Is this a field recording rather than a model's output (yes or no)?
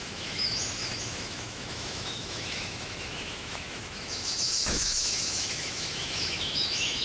no